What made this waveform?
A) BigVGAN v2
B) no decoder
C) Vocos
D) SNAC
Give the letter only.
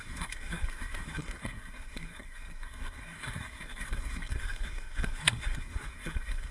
D